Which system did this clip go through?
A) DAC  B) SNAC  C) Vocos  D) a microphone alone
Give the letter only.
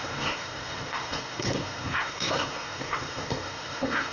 B